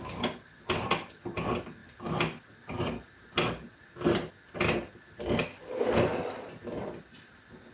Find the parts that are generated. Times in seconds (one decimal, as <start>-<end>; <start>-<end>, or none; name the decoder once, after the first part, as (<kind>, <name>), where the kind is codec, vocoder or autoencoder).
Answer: none